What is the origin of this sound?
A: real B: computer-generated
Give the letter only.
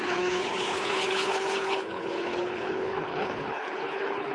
B